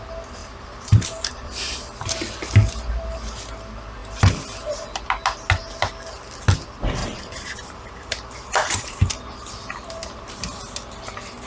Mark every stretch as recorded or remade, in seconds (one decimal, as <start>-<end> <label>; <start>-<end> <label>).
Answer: 0.0-0.4 recorded; 0.4-1.6 remade; 1.6-4.0 recorded; 4.0-5.0 remade; 5.0-7.0 recorded; 7.0-9.1 remade; 9.1-11.5 recorded